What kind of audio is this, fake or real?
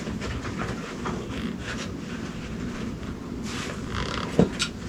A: real